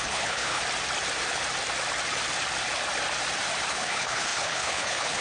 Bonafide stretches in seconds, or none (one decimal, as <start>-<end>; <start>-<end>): 0.6-3.7